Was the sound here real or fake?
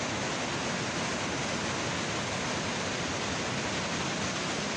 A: real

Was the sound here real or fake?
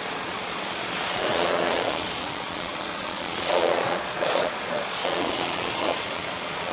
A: fake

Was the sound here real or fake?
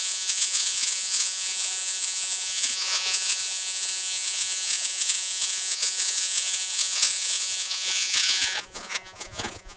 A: fake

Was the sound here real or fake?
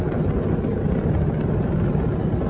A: real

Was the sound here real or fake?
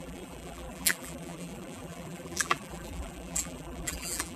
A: fake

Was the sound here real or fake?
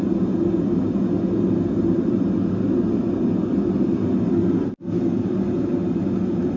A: real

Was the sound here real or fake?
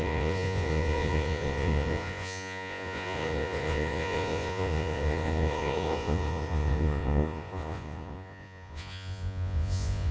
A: fake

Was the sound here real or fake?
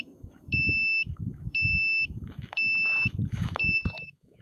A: fake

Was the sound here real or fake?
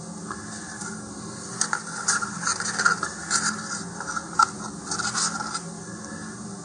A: real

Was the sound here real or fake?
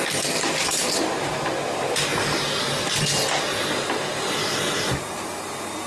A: real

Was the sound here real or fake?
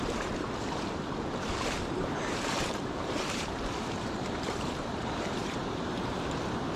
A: fake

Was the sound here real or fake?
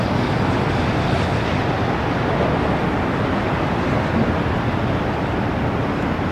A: real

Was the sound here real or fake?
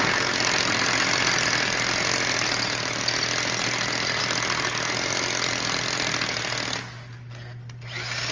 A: real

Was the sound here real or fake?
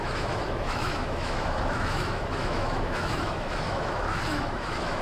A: fake